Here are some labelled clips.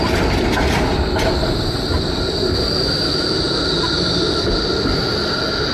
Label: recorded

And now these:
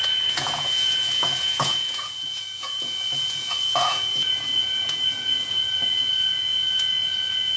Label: remade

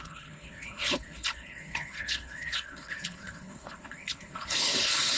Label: remade